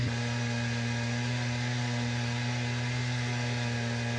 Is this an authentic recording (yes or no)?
yes